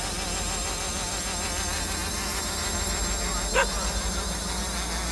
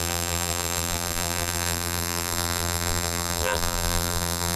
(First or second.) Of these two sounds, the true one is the first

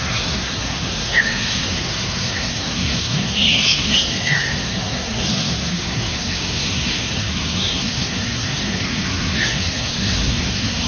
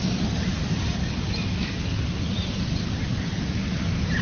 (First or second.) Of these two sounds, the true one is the second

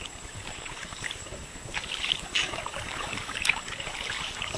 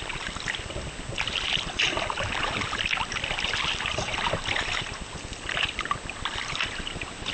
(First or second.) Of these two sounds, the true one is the second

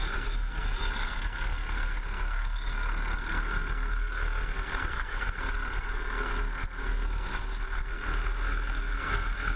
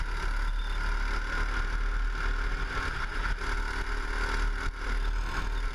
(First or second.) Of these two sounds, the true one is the second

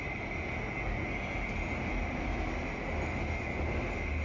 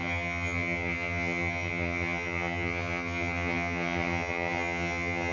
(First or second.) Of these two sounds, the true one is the first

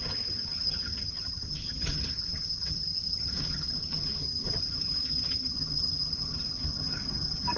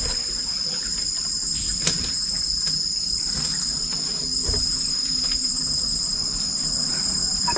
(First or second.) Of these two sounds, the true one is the second